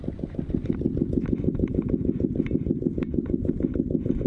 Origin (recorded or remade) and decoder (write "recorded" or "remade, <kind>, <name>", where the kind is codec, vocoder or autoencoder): recorded